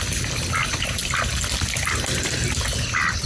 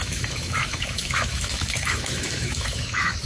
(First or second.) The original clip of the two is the first